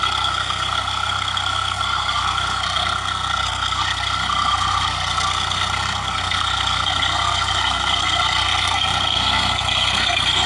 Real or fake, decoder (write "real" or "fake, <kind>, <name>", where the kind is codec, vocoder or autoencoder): fake, codec, SNAC